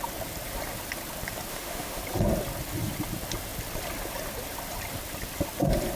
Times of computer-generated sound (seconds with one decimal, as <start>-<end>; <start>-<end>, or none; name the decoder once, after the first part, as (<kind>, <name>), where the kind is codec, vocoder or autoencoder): 1.5-2.0 (autoencoder, DAC-VAE)